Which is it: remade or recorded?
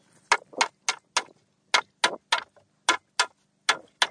recorded